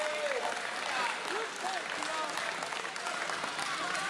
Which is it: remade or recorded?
recorded